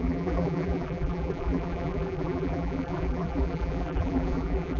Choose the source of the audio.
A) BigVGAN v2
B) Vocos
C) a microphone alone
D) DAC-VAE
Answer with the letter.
A